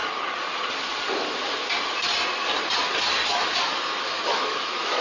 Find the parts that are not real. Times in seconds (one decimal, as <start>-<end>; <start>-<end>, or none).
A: 3.3-5.0